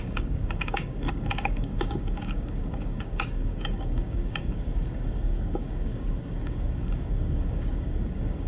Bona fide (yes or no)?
no